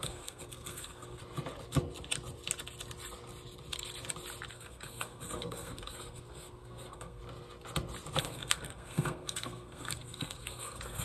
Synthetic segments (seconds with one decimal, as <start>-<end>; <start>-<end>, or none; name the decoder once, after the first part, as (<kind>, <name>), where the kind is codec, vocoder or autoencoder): 0.0-1.2 (codec, SNAC); 4.5-7.2; 8.2-11.0